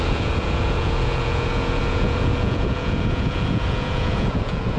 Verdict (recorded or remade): remade